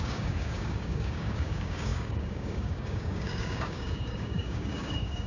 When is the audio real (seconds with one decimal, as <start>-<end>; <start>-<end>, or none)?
none